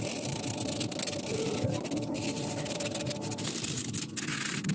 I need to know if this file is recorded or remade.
recorded